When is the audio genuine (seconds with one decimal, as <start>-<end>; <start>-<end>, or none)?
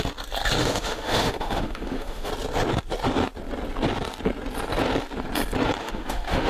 0.0-0.6; 2.3-5.8